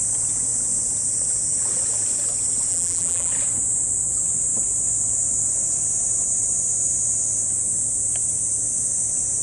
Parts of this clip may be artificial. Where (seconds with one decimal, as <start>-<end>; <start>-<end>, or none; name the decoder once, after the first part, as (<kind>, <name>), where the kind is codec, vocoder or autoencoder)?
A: 2.7-3.3 (vocoder, BigVGAN v2)